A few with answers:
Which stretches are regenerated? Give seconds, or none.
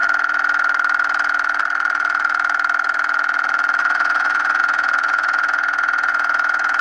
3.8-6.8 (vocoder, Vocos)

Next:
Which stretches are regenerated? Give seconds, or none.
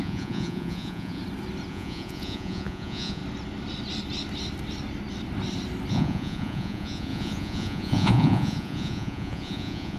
0.0-1.2 (vocoder, Vocos); 1.7-3.2; 5.9-10.0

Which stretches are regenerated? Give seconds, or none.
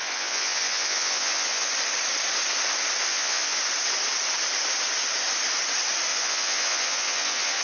0.0-1.7 (vocoder, Vocos); 3.1-3.6; 6.1-7.6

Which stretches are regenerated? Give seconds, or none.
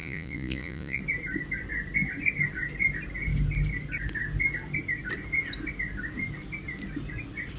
0.0-1.0 (vocoder, Vocos)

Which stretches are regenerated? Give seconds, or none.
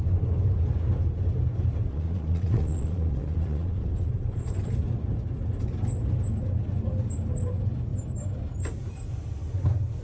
1.9-3.8 (vocoder, Vocos)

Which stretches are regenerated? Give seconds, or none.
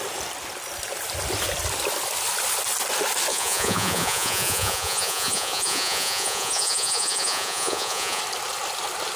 3.3-8.2 (vocoder, Vocos)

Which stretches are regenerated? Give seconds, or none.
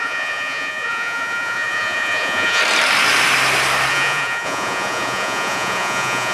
0.0-2.6 (vocoder, Vocos); 3.9-6.3